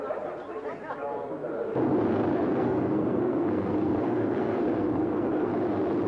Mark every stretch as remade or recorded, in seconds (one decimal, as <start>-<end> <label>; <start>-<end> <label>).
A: 0.0-2.3 recorded; 2.3-5.5 remade; 5.5-6.1 recorded